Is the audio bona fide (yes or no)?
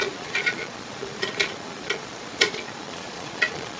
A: no